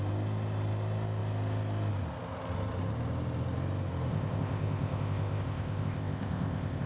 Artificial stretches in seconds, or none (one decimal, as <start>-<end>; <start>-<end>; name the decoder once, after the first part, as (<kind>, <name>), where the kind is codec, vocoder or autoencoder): 4.1-6.9 (codec, ZipCodec)